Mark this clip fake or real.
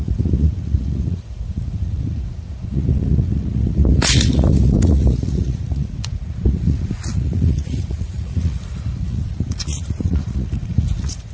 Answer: fake